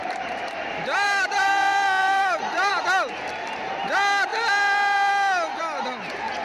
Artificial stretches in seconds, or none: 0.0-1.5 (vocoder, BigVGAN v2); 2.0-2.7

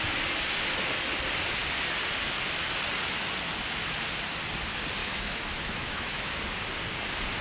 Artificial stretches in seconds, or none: 5.0-6.4 (autoencoder, DAC-VAE)

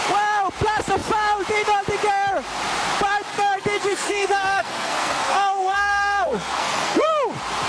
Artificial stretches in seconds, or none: 3.3-7.1 (codec, SNAC)

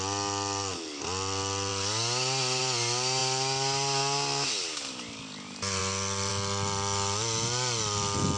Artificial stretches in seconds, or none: none